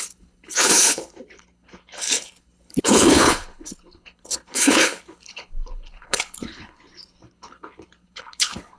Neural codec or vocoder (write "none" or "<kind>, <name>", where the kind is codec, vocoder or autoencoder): codec, HILCodec